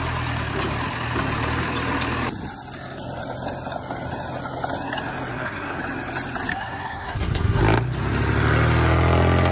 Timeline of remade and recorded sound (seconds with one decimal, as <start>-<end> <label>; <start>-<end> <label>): 0.0-5.3 recorded; 5.3-5.8 remade; 5.8-6.5 recorded; 6.5-7.6 remade; 7.6-9.5 recorded